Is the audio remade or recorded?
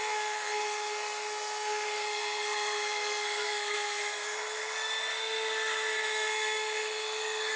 remade